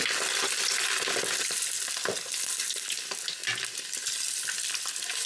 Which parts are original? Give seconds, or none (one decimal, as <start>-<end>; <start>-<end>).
0.0-5.3